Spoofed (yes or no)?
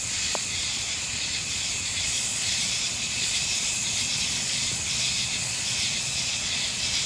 yes